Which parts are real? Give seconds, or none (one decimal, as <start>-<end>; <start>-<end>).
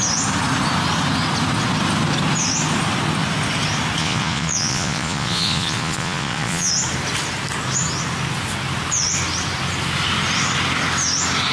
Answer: 0.0-4.0; 6.7-11.5